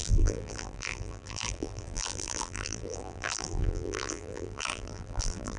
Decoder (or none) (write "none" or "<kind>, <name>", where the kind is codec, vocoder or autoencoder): vocoder, BigVGAN v2